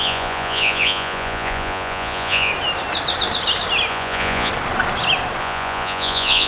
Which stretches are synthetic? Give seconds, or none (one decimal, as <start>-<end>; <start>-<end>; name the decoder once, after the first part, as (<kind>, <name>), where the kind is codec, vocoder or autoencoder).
0.0-2.5 (vocoder, Vocos); 3.9-4.5; 5.4-6.5